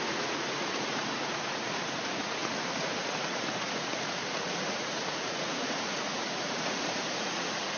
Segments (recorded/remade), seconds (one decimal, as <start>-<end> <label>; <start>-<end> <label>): 0.0-7.8 remade